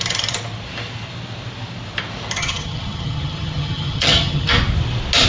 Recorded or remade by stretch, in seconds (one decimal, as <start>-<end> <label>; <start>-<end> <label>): 0.0-2.4 recorded; 2.4-4.5 remade; 4.5-5.3 recorded